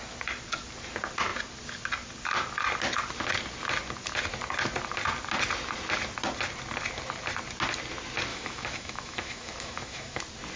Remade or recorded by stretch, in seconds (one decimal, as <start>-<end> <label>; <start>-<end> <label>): 0.0-8.3 recorded; 8.3-10.2 remade; 10.2-10.6 recorded